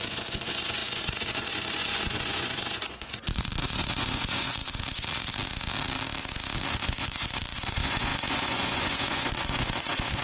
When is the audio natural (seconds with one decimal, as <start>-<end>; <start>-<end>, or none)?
4.6-6.7